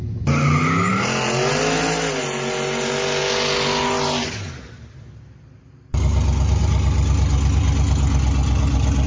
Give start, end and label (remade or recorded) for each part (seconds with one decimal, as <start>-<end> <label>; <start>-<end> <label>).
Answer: 0.0-9.1 recorded